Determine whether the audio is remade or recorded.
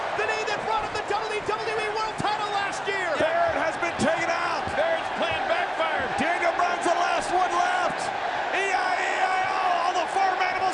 recorded